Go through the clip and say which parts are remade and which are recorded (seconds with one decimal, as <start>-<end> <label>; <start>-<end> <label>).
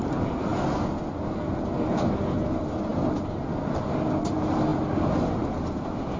0.0-6.2 recorded